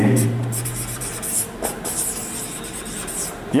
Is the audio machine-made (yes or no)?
yes